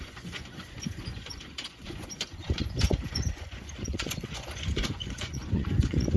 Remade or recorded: remade